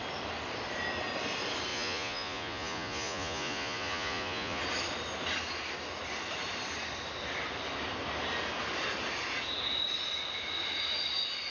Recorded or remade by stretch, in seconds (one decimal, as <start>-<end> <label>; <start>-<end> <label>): 0.0-1.7 recorded; 1.7-4.6 remade; 4.6-11.5 recorded